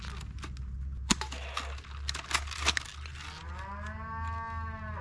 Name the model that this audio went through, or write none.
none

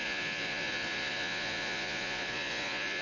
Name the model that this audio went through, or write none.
vocoder, Vocos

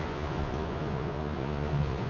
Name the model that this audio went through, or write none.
vocoder, Vocos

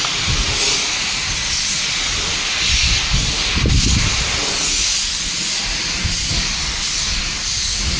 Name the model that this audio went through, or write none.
none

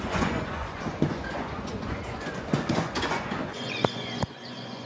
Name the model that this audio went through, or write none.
vocoder, Vocos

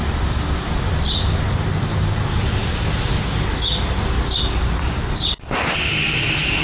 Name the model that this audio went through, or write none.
none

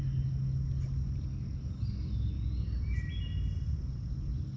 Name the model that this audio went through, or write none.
none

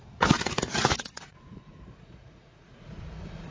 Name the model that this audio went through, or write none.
vocoder, Vocos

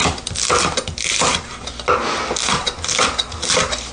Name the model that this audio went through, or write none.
none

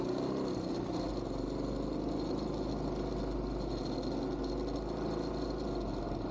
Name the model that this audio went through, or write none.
none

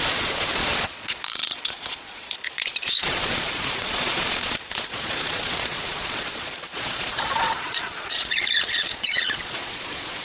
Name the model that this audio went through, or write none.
vocoder, Vocos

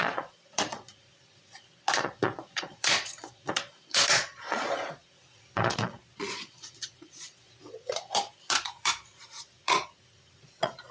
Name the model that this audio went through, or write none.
vocoder, Vocos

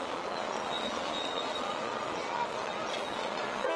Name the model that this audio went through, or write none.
vocoder, Vocos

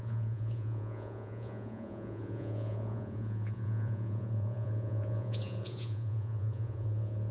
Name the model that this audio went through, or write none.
vocoder, Vocos